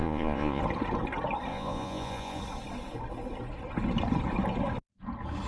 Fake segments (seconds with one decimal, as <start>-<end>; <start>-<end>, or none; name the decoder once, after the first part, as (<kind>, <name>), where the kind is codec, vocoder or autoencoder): 0.0-0.6 (vocoder, Vocos); 1.5-2.4